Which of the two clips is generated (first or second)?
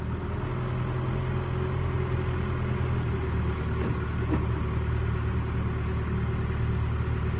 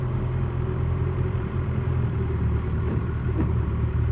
second